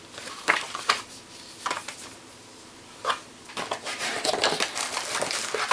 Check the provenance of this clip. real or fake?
fake